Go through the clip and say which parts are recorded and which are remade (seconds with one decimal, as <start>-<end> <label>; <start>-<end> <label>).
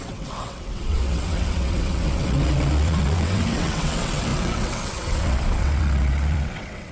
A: 0.0-6.9 remade